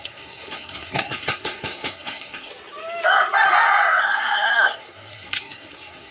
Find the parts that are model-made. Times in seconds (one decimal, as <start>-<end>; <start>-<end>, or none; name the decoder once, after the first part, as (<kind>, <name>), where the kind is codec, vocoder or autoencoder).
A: 0.0-2.5 (codec, SNAC); 4.0-6.1